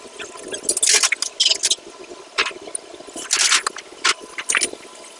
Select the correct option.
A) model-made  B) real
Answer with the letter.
B